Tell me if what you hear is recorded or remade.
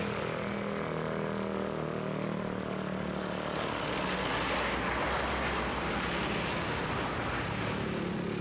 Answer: recorded